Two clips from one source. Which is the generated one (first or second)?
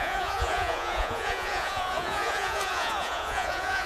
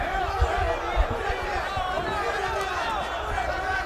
first